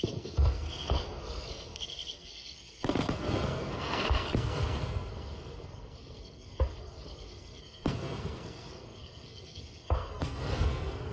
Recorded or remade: remade